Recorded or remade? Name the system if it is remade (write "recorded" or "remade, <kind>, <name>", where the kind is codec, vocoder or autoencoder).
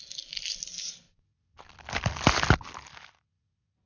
recorded